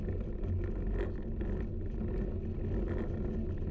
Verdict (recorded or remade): recorded